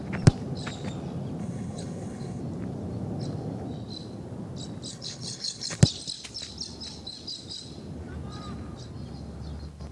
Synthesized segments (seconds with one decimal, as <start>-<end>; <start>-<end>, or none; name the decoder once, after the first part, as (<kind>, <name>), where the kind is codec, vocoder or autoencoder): 1.4-2.4 (codec, HILCodec); 4.9-5.8